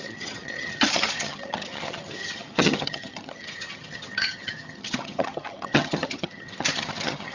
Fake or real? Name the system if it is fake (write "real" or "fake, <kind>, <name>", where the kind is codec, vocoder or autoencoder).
fake, vocoder, HiFi-GAN